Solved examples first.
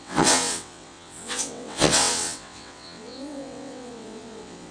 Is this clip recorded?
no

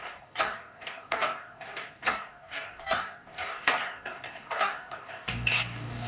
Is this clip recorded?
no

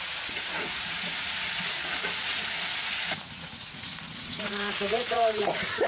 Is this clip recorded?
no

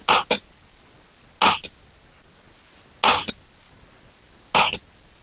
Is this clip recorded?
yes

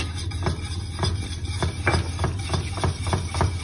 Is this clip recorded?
yes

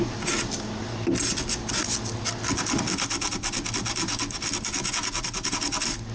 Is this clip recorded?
yes